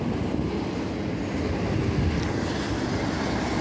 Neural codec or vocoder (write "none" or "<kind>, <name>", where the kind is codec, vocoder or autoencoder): none